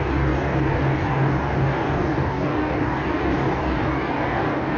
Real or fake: fake